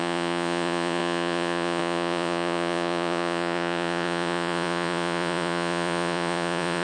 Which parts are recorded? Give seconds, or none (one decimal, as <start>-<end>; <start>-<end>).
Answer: none